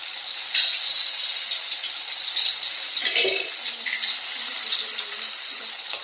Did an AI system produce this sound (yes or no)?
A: no